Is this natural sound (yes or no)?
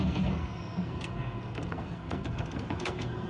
no